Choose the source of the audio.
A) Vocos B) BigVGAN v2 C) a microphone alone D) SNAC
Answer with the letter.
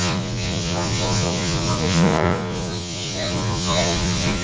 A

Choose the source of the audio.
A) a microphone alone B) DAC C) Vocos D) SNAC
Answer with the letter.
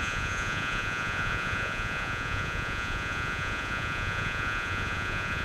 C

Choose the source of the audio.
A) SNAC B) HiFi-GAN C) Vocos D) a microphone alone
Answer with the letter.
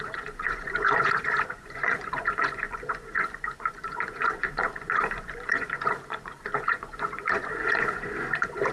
C